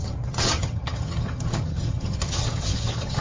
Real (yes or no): no